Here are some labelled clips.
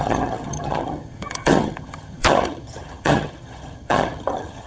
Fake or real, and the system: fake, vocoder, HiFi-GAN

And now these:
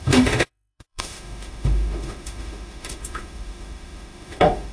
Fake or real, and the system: fake, autoencoder, DAC-VAE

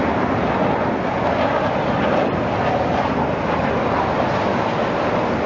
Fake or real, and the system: real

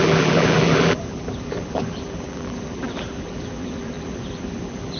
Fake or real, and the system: fake, vocoder, BigVGAN v2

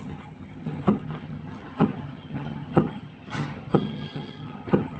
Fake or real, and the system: fake, vocoder, HiFi-GAN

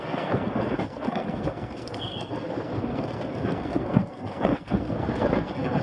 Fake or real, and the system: fake, codec, SNAC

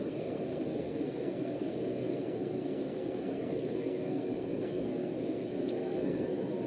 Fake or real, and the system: fake, codec, SNAC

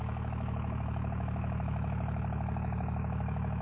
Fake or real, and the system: fake, autoencoder, DAC-VAE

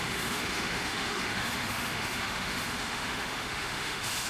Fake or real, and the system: fake, autoencoder, DAC-VAE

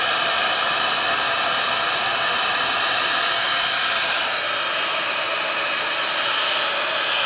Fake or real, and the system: real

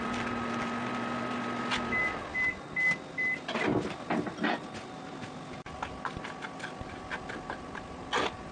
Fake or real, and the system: real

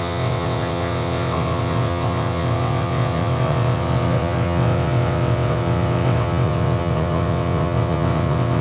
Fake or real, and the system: fake, vocoder, WaveNeXt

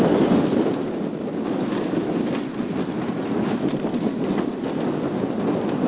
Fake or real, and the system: real